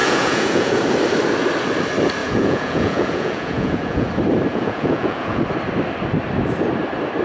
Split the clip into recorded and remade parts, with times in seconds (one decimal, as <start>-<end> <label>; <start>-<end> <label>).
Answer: 0.0-0.8 remade; 0.8-2.2 recorded; 2.2-4.1 remade; 4.1-4.5 recorded; 4.5-5.4 remade; 5.4-7.2 recorded

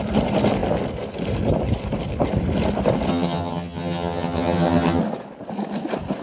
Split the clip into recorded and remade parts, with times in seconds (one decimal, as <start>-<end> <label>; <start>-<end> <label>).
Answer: 0.0-3.1 recorded; 3.1-5.0 remade; 5.0-6.2 recorded

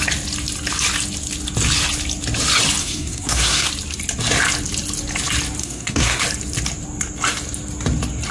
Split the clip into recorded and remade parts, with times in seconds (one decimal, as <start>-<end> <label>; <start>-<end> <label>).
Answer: 0.0-2.8 recorded; 2.8-3.7 remade; 3.7-5.6 recorded; 5.6-6.2 remade; 6.2-8.3 recorded

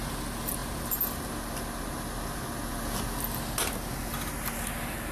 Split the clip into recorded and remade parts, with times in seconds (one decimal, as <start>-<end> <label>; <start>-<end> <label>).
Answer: 0.0-5.1 recorded

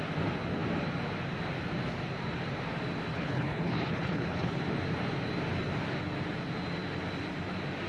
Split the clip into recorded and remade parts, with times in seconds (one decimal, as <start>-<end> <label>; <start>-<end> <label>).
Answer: 0.0-3.1 recorded; 3.1-4.6 remade; 4.6-7.9 recorded

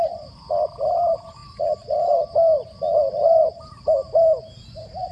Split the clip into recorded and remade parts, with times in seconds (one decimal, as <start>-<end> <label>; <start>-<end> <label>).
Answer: 0.0-5.1 recorded

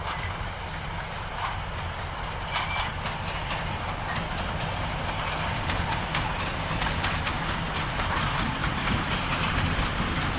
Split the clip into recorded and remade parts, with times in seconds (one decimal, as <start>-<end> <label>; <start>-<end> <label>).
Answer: 0.0-8.6 recorded; 8.6-10.0 remade; 10.0-10.4 recorded

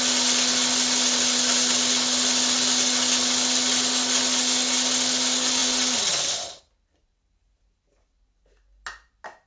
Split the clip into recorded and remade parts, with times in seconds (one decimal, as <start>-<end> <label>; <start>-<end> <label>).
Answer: 0.0-9.5 recorded